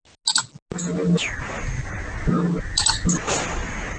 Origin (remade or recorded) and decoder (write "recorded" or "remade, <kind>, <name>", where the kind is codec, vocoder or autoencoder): recorded